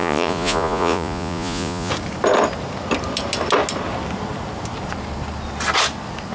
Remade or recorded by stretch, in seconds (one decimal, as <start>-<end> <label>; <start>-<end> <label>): 0.0-1.9 remade; 1.9-6.3 recorded